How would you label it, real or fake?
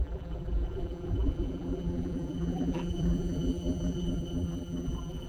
fake